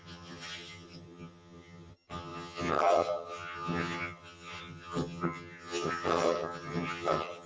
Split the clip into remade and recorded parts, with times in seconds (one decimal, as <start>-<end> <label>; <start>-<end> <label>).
0.0-7.5 remade